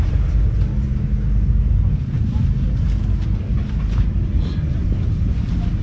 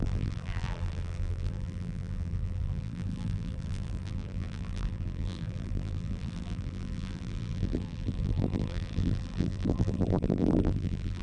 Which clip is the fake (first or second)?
second